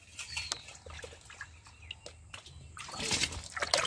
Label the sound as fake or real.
real